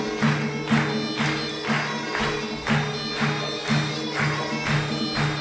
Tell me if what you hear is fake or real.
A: real